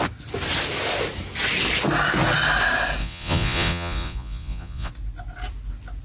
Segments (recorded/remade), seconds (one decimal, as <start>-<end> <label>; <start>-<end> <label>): 0.0-3.0 recorded; 3.0-4.9 remade; 4.9-6.0 recorded